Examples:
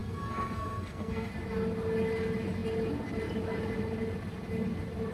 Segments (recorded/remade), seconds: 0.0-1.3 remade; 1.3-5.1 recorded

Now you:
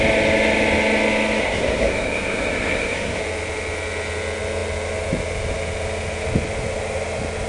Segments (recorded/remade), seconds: 0.0-1.4 recorded; 1.4-3.2 remade; 3.2-7.5 recorded

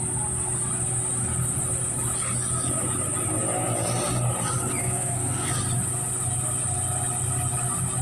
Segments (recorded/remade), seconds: 0.0-4.8 recorded; 4.8-5.5 remade; 5.5-8.0 recorded

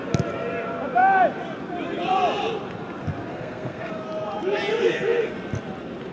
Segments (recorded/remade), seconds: 0.0-3.3 recorded; 3.3-3.9 remade; 3.9-4.7 recorded; 4.7-5.3 remade; 5.3-6.1 recorded

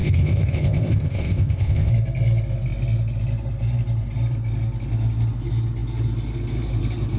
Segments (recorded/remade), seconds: 0.0-1.9 remade; 1.9-7.2 recorded

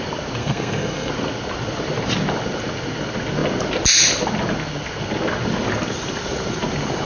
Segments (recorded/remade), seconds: 0.0-0.4 recorded; 0.4-1.1 remade; 1.1-7.0 recorded